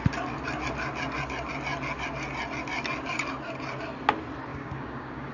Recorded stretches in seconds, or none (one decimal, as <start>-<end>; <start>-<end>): 0.0-4.5